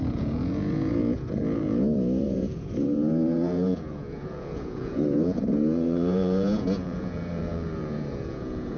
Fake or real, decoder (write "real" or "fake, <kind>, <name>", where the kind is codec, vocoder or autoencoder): fake, vocoder, Vocos